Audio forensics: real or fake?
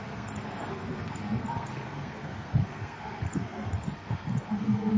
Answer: fake